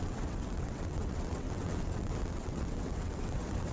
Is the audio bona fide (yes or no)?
no